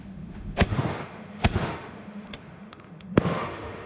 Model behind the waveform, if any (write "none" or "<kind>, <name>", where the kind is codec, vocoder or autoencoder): autoencoder, DAC-VAE